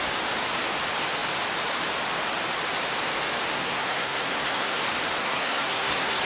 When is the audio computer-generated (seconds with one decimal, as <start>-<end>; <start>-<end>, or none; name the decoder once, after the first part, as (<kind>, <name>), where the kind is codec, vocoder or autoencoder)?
3.5-4.8 (codec, SNAC); 5.2-6.2